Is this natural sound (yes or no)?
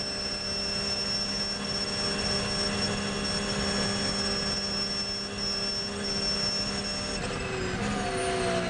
yes